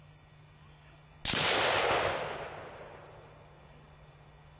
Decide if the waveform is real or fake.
real